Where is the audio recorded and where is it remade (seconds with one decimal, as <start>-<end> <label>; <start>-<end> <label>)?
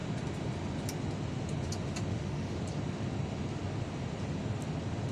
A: 0.0-2.1 recorded; 2.1-2.6 remade; 2.6-5.1 recorded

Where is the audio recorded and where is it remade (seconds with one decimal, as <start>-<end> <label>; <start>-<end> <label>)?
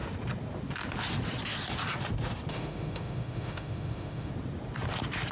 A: 0.0-2.5 recorded; 2.5-4.3 remade; 4.3-5.3 recorded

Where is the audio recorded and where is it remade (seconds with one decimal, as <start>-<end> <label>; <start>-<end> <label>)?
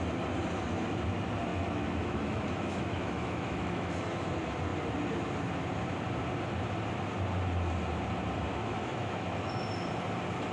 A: 0.0-1.5 recorded; 1.5-4.3 remade; 4.3-8.5 recorded; 8.5-9.7 remade; 9.7-10.5 recorded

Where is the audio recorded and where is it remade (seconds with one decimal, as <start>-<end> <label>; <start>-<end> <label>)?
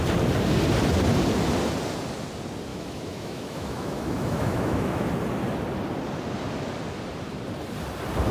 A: 0.0-2.7 recorded; 2.7-5.1 remade; 5.1-8.3 recorded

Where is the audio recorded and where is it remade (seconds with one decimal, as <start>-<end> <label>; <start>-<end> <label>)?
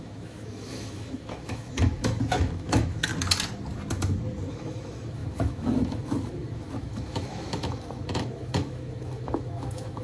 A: 0.0-3.1 remade; 3.1-4.5 recorded; 4.5-10.0 remade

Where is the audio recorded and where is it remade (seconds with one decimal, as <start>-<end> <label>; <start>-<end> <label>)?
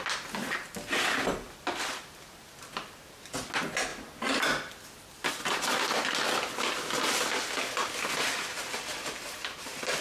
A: 0.0-10.0 recorded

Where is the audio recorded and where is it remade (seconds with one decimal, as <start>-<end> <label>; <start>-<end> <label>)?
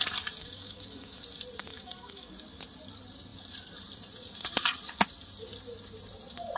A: 0.0-0.4 recorded; 0.4-1.2 remade; 1.2-1.7 recorded; 1.7-2.3 remade; 2.3-6.6 recorded